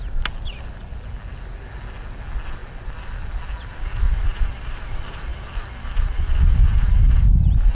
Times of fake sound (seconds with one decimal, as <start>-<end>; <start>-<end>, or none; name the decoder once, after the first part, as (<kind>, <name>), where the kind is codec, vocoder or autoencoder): none